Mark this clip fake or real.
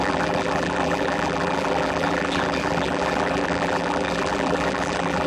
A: fake